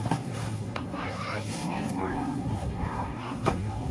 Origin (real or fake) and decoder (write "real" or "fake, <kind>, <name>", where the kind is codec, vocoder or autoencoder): fake, codec, SNAC